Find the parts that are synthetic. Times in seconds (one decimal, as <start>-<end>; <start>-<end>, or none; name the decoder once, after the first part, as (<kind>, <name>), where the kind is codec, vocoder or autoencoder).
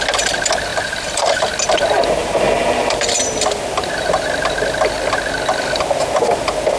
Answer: 0.7-1.5 (vocoder, BigVGAN v2); 2.2-2.8